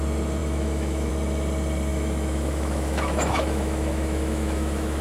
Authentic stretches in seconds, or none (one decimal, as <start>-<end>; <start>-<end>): 0.0-0.4; 1.1-1.9